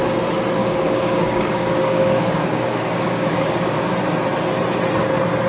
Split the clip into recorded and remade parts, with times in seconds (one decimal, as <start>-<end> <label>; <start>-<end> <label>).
0.0-0.6 recorded; 0.6-3.9 remade; 3.9-5.5 recorded